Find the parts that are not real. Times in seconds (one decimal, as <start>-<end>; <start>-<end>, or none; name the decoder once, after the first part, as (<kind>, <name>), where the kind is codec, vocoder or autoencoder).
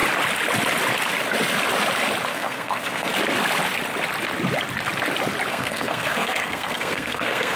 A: 2.3-3.1 (codec, SNAC); 5.5-7.6